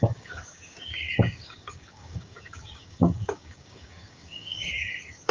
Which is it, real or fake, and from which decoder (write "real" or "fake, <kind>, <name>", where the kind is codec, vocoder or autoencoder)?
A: fake, codec, DAC